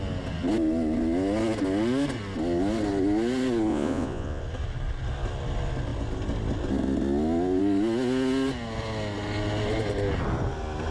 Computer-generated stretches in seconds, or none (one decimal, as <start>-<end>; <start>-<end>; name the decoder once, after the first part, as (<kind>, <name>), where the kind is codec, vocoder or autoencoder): 3.7-4.4 (vocoder, Vocos)